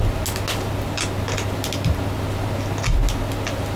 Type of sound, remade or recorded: recorded